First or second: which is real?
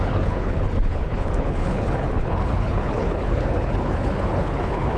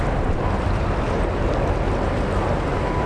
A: second